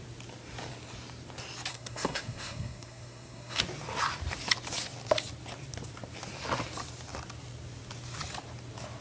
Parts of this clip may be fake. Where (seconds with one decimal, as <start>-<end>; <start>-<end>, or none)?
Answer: 1.7-3.6